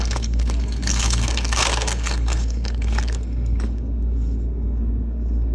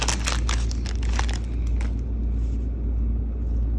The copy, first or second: first